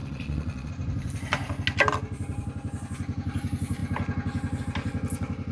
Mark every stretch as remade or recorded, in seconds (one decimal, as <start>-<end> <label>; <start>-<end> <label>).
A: 0.0-0.7 remade; 0.7-5.5 recorded